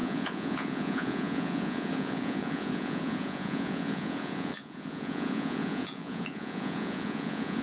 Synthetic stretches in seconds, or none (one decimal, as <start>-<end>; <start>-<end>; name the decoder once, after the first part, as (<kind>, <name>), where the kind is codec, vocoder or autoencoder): 0.0-7.6 (vocoder, Vocos)